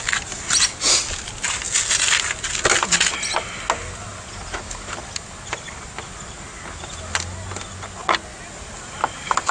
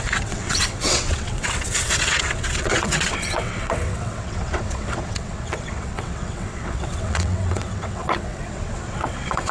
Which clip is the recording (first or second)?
first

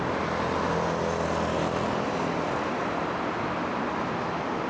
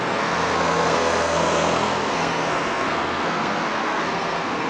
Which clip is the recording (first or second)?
first